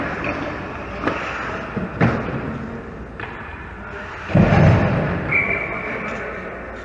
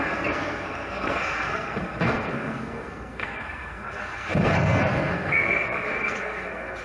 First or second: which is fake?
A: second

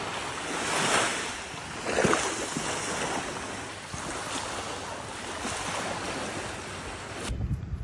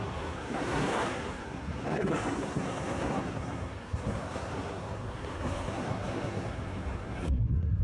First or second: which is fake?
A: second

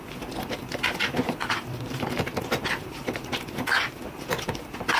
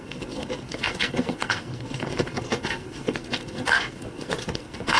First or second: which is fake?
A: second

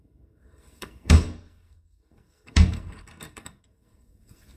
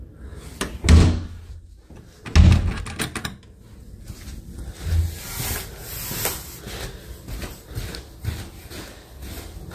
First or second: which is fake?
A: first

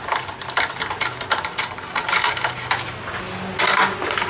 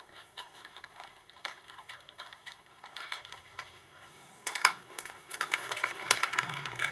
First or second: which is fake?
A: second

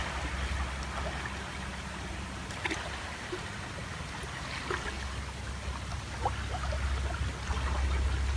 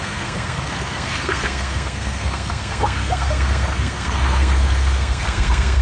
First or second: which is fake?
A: second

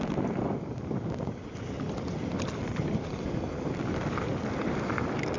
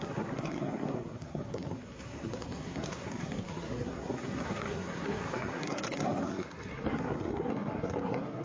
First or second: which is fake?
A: second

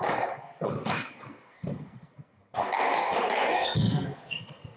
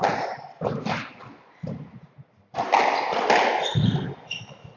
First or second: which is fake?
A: first